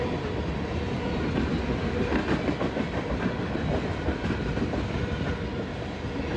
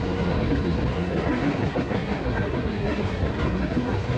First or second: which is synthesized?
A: second